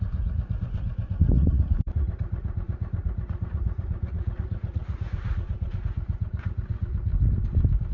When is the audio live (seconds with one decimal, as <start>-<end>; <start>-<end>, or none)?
7.1-7.9